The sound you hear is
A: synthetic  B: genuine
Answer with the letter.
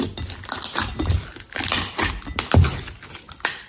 B